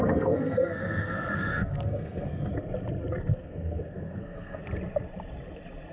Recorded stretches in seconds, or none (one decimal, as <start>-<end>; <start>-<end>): 2.5-3.3; 4.6-5.9